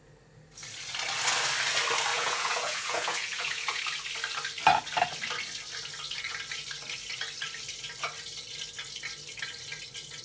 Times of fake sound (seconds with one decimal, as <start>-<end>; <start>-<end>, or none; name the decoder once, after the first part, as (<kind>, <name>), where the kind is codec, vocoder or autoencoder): 2.1-3.8 (vocoder, Vocos)

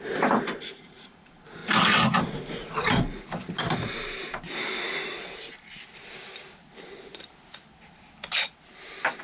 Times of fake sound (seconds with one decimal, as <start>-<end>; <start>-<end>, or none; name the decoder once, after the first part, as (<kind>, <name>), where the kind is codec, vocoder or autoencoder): none

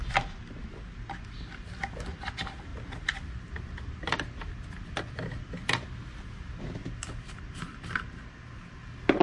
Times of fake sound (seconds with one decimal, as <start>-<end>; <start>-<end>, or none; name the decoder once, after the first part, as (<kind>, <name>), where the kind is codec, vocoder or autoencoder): none